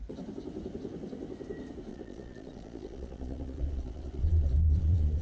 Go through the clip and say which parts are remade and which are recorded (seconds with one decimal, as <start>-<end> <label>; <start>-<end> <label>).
0.0-1.9 recorded; 1.9-5.2 remade